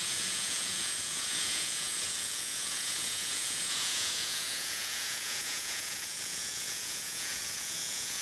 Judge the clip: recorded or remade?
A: remade